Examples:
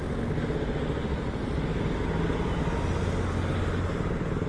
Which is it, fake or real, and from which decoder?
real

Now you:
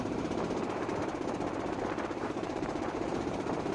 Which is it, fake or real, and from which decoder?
fake, vocoder, BigVGAN v2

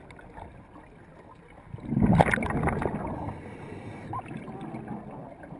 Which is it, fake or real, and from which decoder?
real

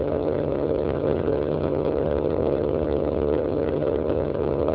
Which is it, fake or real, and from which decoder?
fake, vocoder, HiFi-GAN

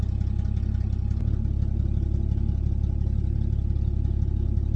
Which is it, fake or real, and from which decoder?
real